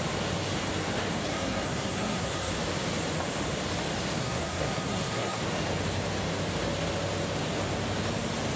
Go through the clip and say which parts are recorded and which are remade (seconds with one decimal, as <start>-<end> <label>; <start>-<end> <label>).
0.0-1.3 recorded; 1.3-2.5 remade; 2.5-4.2 recorded; 4.2-5.4 remade; 5.4-8.6 recorded